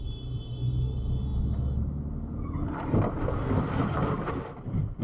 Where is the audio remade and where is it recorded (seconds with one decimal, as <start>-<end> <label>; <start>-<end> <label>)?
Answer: 0.0-5.0 recorded